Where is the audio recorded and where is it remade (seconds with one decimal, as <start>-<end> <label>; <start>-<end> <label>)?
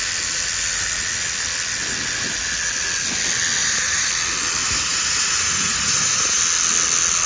0.0-3.6 recorded; 3.6-4.1 remade; 4.1-4.6 recorded; 4.6-6.4 remade; 6.4-7.3 recorded